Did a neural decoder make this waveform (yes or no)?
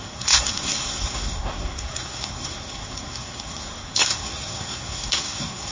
yes